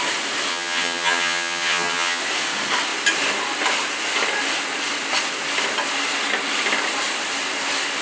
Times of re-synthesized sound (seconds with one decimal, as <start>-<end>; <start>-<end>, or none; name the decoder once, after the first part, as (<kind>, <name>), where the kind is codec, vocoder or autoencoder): 0.5-2.2 (vocoder, HiFi-GAN)